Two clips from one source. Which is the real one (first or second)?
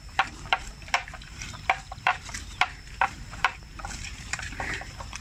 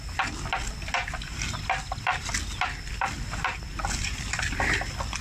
second